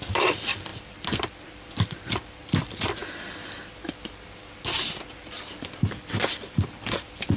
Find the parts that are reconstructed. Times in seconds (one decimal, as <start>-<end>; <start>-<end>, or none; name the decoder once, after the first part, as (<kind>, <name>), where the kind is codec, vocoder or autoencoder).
0.0-3.0 (vocoder, BigVGAN v2); 6.2-7.4